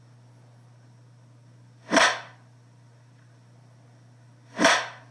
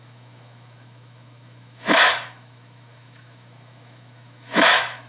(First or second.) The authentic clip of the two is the first